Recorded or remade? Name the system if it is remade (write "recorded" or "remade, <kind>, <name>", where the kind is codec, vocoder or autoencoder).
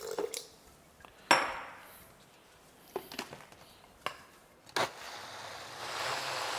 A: recorded